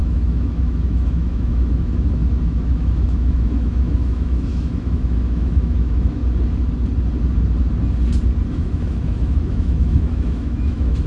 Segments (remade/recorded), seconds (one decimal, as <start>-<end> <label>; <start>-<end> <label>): 0.0-6.2 remade; 6.2-8.5 recorded; 8.5-11.1 remade